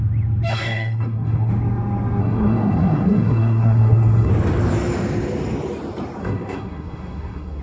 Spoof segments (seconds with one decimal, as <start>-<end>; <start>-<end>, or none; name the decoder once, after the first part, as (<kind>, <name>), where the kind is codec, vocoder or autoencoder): 0.5-1.5 (codec, SNAC); 2.2-4.3; 6.2-7.6